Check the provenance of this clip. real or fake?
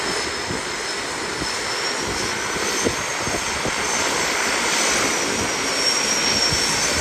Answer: real